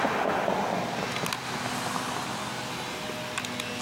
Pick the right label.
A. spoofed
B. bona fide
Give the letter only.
B